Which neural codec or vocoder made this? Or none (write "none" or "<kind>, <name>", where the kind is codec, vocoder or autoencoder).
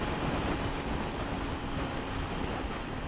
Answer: none